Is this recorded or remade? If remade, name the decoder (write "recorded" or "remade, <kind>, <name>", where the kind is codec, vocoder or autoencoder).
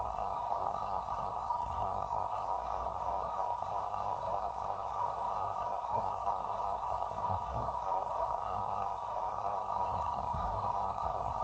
remade, codec, SNAC